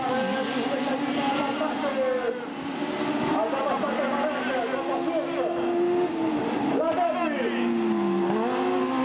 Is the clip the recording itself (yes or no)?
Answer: yes